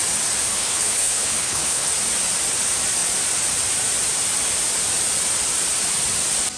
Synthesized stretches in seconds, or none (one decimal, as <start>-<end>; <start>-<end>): 0.5-1.9